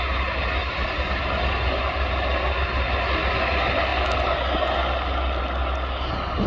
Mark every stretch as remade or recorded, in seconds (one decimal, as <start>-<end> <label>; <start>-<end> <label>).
0.0-6.5 recorded